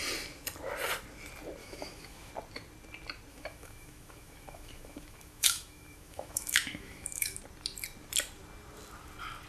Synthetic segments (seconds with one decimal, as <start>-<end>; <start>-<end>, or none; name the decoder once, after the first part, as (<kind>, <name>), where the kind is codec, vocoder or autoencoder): 1.6-2.3 (autoencoder, DAC-VAE); 3.3-7.4